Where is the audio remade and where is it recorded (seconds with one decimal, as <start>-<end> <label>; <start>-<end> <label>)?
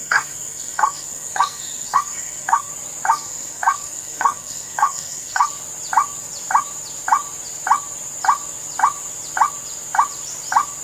0.0-2.7 remade; 2.7-3.1 recorded; 3.1-5.5 remade; 5.5-10.8 recorded